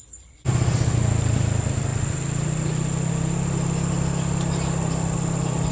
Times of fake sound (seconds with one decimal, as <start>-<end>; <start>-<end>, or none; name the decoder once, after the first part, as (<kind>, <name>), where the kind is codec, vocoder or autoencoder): none